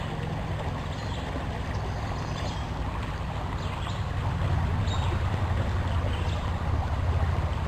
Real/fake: real